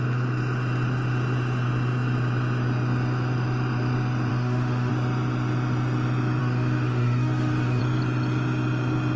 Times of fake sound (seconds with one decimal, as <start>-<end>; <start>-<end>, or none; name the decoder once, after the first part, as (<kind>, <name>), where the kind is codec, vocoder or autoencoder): 4.3-4.9 (autoencoder, DAC-VAE); 6.4-7.8